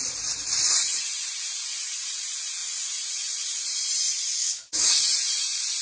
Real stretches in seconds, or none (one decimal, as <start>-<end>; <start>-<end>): 0.0-4.4; 5.0-5.8